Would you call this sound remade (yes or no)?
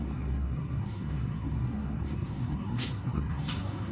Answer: yes